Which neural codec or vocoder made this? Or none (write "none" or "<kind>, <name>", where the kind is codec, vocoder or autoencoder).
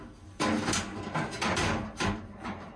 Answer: none